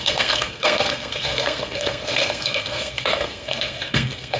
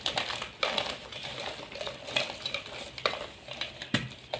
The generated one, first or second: first